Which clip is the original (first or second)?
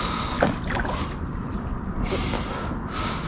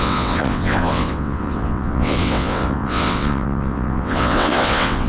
first